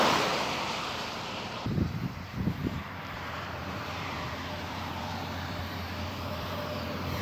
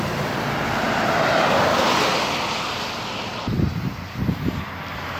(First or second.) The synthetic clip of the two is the first